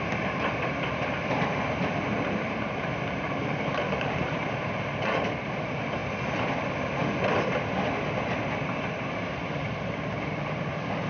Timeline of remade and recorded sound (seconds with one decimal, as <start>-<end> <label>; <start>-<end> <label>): 0.0-6.0 remade; 6.0-9.2 recorded; 9.2-11.1 remade